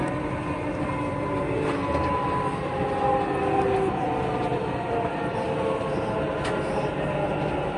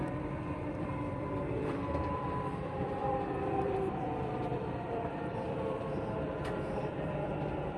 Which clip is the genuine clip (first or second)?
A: first